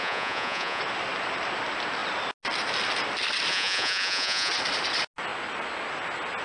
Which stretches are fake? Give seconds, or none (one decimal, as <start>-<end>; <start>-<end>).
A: 0.0-0.8; 3.5-4.5